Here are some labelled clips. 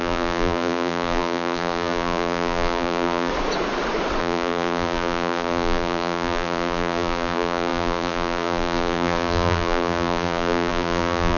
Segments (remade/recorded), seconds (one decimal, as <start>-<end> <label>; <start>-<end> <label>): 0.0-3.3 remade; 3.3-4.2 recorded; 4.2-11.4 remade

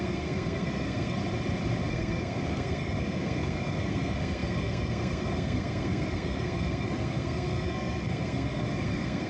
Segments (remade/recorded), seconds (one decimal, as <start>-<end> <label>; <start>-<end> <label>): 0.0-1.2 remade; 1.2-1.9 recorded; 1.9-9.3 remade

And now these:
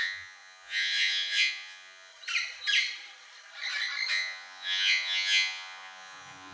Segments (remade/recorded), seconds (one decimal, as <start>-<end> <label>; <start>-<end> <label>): 0.0-2.1 remade; 2.1-4.1 recorded; 4.1-6.5 remade

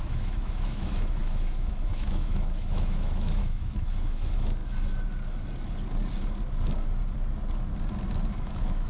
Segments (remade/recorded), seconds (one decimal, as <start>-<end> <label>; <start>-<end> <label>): 0.0-4.6 remade; 4.6-8.3 recorded; 8.3-8.9 remade